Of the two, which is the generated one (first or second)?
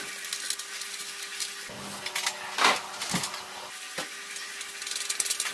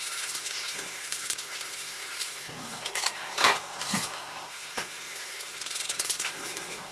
second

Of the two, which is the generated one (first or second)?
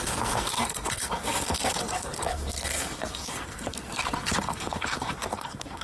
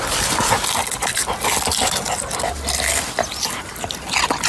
first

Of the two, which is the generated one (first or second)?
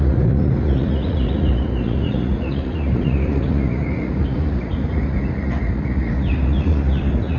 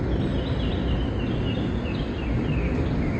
first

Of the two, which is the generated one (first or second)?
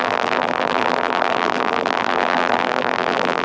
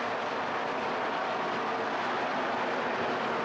first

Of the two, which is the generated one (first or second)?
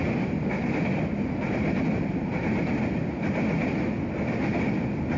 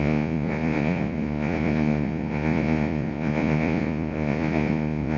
second